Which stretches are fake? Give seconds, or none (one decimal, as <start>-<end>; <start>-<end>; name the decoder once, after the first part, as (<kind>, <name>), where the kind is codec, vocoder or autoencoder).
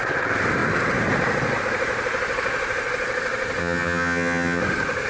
3.6-4.6 (vocoder, HiFi-GAN)